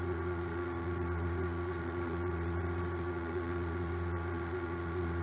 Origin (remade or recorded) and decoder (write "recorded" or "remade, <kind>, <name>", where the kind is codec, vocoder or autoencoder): remade, vocoder, Vocos